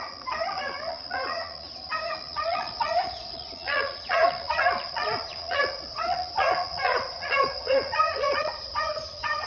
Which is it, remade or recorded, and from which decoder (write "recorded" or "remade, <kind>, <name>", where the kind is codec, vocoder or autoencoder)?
remade, vocoder, Vocos